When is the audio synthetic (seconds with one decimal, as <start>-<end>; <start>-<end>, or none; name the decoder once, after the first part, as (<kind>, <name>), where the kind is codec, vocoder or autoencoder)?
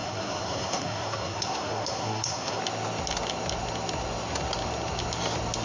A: 0.0-2.6 (codec, SNAC)